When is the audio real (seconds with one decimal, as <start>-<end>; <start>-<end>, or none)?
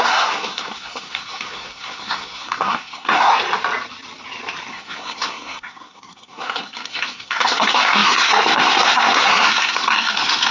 3.3-4.7